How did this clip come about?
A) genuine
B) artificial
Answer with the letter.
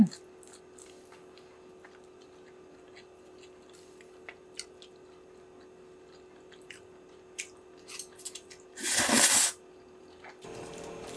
A